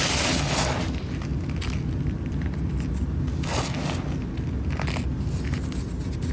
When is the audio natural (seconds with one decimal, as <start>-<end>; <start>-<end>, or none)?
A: 0.0-6.3